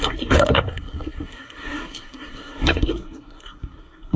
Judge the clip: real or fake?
fake